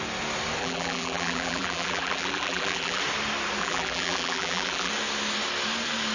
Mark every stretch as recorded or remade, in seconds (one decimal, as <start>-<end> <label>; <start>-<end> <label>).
0.0-0.6 recorded; 0.6-3.0 remade; 3.0-3.6 recorded; 3.6-4.9 remade; 4.9-6.1 recorded